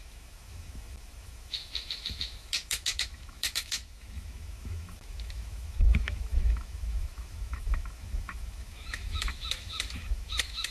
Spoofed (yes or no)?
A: yes